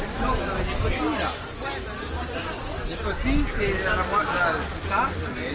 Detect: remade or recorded recorded